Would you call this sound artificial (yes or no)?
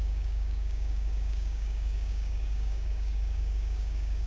yes